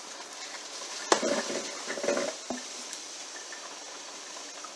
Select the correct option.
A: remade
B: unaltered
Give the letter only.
B